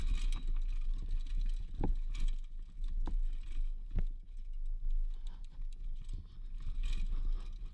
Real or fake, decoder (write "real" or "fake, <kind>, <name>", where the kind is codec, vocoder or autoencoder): real